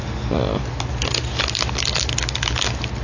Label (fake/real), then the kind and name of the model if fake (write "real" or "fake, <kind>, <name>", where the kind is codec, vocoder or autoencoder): real